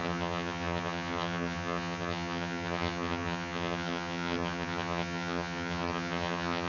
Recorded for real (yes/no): no